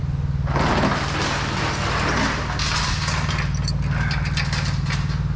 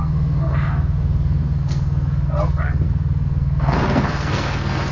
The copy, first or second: second